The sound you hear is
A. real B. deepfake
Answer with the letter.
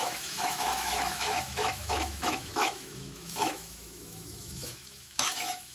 B